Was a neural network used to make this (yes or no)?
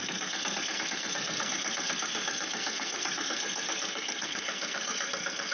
yes